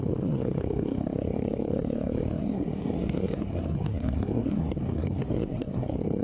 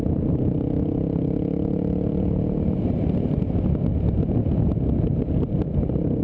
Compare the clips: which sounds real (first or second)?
second